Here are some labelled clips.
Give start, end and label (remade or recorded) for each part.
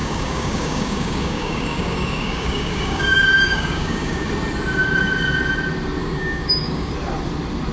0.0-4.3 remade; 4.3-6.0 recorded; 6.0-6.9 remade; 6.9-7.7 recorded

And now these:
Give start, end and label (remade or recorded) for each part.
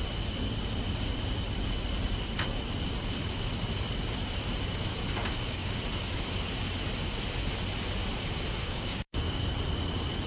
0.0-5.2 recorded; 5.2-5.8 remade; 5.8-8.6 recorded; 8.6-9.4 remade; 9.4-10.3 recorded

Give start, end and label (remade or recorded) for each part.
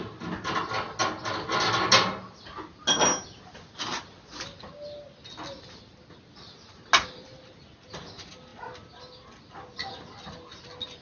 0.0-11.0 recorded